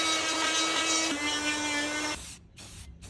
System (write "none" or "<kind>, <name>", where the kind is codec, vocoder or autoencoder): none